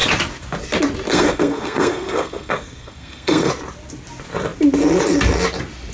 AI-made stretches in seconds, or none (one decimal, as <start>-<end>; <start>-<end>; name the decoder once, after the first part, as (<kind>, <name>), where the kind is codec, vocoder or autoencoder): 1.1-3.5 (codec, SNAC)